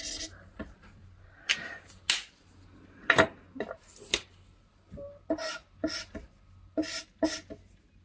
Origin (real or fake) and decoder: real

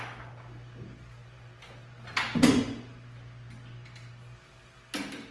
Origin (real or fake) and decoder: real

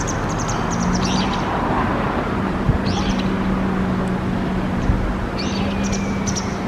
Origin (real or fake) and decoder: real